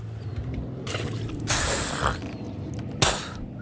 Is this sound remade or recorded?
recorded